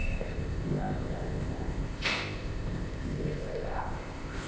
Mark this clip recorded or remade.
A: remade